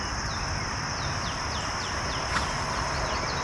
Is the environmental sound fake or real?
real